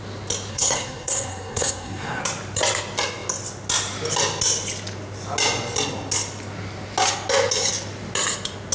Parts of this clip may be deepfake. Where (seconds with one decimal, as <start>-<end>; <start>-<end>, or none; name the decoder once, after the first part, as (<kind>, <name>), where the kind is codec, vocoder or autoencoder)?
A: 0.5-2.2 (codec, SNAC)